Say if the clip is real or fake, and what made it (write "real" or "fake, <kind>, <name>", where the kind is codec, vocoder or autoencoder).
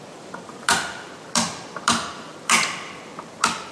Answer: fake, vocoder, BigVGAN v2